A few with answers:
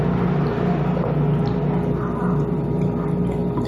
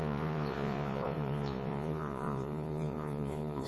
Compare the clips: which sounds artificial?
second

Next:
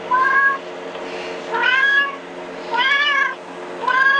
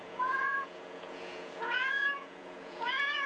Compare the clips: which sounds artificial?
second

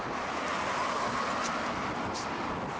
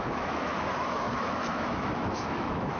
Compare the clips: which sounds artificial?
second